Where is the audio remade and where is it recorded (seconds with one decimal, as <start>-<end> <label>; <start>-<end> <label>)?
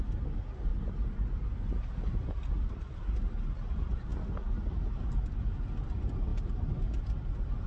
0.0-7.7 recorded